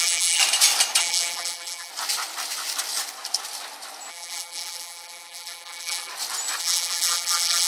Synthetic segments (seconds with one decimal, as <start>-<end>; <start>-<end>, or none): 0.0-0.4; 1.0-1.9; 4.1-6.1; 6.6-7.7